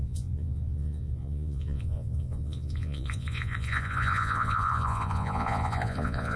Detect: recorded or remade remade